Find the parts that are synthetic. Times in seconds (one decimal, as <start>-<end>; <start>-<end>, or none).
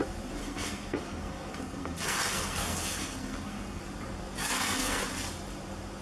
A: 0.4-3.8; 4.4-5.0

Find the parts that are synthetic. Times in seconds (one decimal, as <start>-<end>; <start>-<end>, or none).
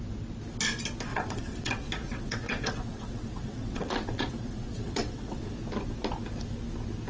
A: 1.1-1.7; 2.1-5.5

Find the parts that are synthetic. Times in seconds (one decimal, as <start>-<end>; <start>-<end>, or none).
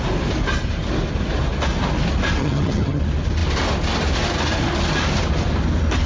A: 2.4-3.0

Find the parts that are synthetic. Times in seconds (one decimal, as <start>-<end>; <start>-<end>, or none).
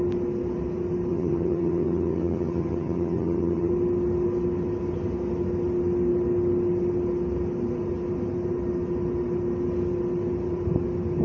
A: 1.1-3.7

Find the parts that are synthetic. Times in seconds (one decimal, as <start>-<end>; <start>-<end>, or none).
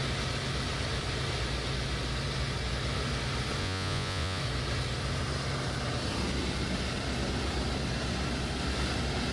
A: 3.6-4.4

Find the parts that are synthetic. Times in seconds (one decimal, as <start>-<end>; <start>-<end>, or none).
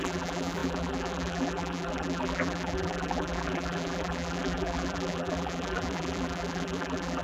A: 0.0-7.2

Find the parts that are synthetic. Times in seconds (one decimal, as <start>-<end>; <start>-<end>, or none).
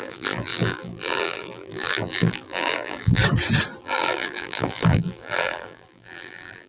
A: 0.0-3.2; 3.8-6.7